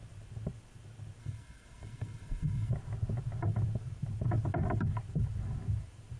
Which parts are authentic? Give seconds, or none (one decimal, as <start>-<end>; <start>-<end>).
0.0-1.2; 2.7-6.2